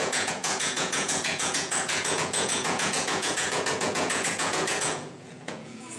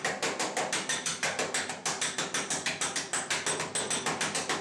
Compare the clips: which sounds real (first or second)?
second